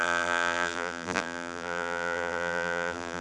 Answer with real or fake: fake